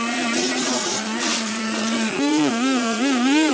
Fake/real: fake